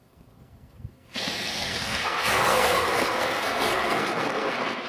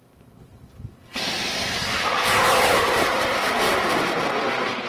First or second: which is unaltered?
second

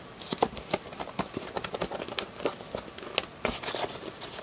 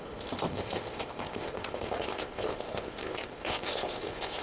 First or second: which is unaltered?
first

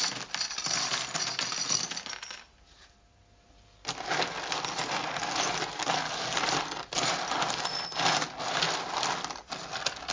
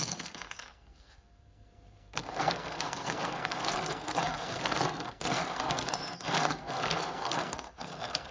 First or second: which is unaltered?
first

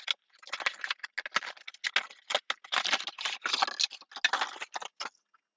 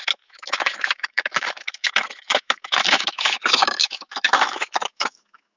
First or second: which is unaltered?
first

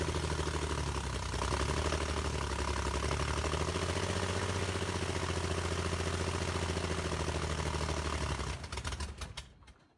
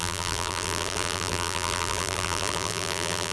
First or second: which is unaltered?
first